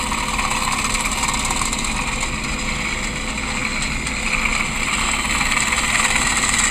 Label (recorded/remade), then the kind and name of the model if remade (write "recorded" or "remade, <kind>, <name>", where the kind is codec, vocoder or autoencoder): recorded